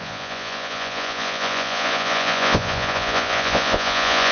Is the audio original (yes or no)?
no